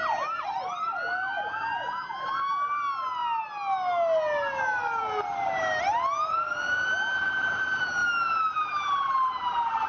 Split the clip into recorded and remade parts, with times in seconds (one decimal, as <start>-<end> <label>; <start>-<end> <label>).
0.0-9.9 recorded

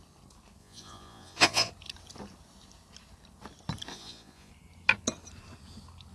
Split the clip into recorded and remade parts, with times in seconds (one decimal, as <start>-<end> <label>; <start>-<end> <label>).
0.0-0.6 recorded; 0.6-1.7 remade; 1.7-3.9 recorded; 3.9-4.5 remade; 4.5-6.1 recorded

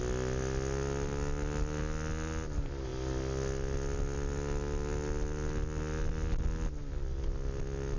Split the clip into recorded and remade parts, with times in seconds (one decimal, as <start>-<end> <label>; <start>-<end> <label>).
0.0-8.0 recorded